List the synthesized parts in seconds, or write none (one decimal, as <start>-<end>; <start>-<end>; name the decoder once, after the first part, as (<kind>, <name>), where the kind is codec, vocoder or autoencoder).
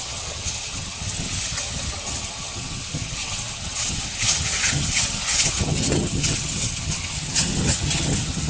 0.0-8.5 (vocoder, HiFi-GAN)